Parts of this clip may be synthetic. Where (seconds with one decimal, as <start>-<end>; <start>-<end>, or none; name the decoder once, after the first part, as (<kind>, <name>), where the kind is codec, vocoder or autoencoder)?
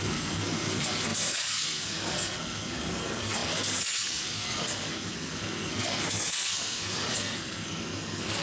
0.0-8.4 (codec, SNAC)